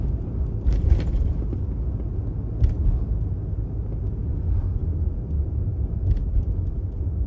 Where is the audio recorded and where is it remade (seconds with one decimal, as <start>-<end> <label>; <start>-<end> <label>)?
0.0-7.3 recorded